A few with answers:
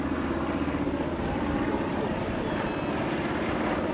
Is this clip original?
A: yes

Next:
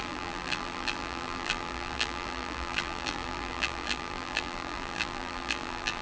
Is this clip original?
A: no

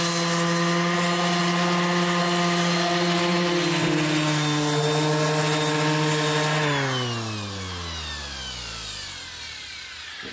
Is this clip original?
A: yes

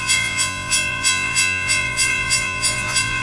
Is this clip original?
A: no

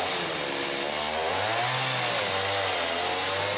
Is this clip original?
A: yes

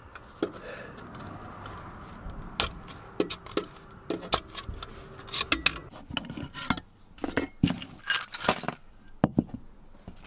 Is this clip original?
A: yes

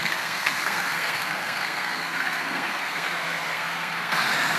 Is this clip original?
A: no